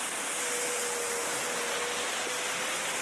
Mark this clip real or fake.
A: real